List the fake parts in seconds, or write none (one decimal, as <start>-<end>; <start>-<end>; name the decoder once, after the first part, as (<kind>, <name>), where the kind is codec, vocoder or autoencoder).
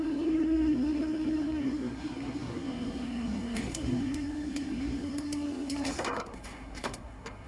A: 0.0-7.5 (codec, SNAC)